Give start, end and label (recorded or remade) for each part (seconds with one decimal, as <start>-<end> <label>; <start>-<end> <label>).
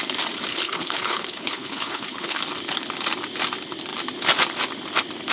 0.0-0.5 recorded; 0.5-2.4 remade; 2.4-5.3 recorded